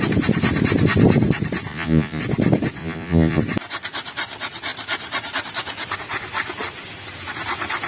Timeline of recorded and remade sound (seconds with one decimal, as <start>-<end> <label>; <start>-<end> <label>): 0.0-1.7 recorded; 1.7-2.2 remade; 2.2-2.8 recorded; 2.8-3.4 remade; 3.4-7.9 recorded